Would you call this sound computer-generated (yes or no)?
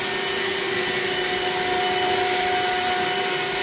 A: no